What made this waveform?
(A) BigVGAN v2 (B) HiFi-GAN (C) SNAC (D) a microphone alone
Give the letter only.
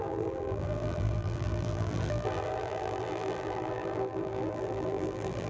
A